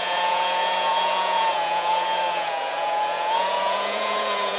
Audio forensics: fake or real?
fake